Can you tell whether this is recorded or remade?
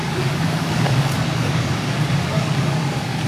remade